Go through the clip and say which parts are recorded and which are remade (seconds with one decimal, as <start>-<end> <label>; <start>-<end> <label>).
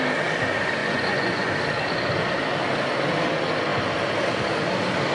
0.0-0.8 recorded; 0.8-1.5 remade; 1.5-5.1 recorded